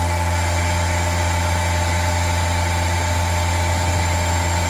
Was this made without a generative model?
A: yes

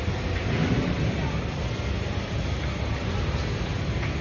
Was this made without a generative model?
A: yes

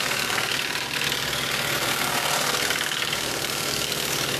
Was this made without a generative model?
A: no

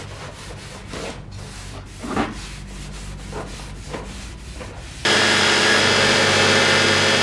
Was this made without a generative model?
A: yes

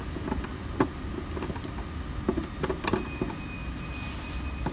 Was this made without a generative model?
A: yes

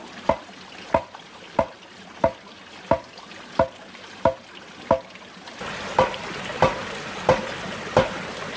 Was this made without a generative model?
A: yes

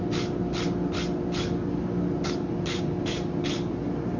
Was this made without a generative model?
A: yes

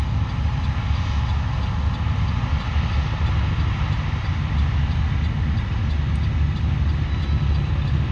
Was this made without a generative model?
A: yes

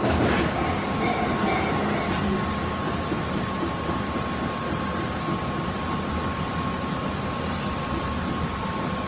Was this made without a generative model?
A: yes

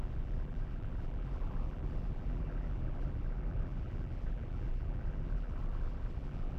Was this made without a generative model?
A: no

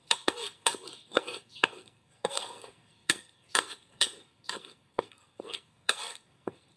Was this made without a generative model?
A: no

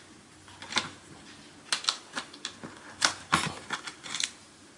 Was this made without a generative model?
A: yes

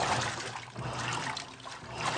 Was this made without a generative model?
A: yes